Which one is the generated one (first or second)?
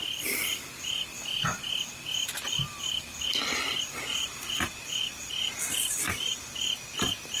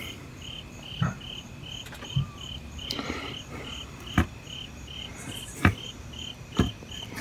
second